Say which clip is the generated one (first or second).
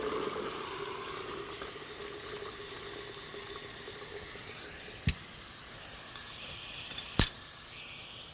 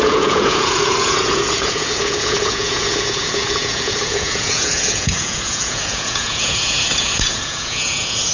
second